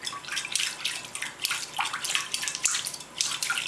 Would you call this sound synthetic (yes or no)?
no